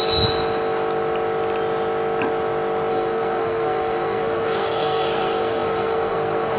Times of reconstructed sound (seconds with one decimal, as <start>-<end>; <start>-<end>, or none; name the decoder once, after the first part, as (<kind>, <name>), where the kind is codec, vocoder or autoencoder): 2.9-6.6 (codec, SNAC)